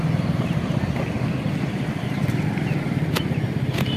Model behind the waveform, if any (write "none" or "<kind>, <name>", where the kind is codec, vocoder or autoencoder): none